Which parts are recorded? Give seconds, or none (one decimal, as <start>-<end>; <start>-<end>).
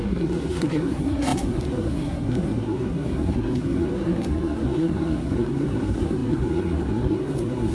none